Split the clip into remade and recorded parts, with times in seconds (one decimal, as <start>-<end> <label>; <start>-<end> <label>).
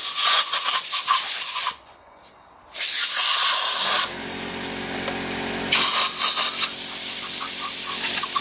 0.0-0.7 remade; 0.7-1.5 recorded; 1.5-2.2 remade; 2.2-8.4 recorded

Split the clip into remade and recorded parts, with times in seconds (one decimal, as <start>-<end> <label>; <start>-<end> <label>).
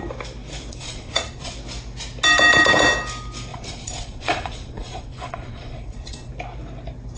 0.0-0.7 recorded; 0.7-1.5 remade; 1.5-3.5 recorded; 3.5-6.3 remade; 6.3-7.2 recorded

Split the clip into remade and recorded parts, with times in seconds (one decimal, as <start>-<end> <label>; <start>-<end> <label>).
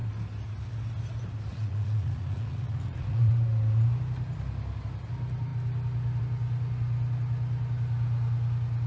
0.0-1.5 recorded; 1.5-3.3 remade; 3.3-8.9 recorded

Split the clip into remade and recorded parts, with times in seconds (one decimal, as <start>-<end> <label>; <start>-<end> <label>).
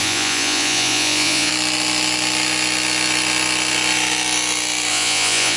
0.0-1.5 remade; 1.5-4.9 recorded; 4.9-5.6 remade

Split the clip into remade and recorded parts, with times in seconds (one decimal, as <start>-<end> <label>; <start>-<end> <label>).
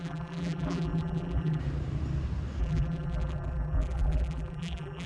0.0-1.6 remade; 1.6-2.6 recorded; 2.6-5.1 remade